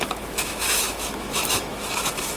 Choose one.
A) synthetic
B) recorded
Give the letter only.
A